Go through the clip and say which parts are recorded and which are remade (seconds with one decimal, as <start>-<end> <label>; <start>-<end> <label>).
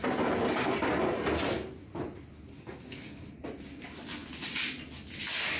0.0-2.5 recorded; 2.5-3.4 remade; 3.4-5.6 recorded